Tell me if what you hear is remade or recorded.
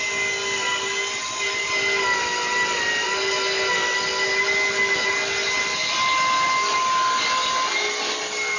recorded